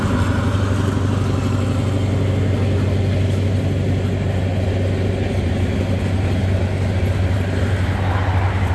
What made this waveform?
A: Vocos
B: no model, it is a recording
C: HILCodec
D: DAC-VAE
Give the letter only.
B